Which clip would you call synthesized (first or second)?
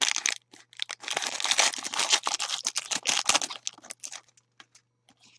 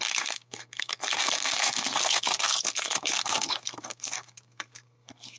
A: second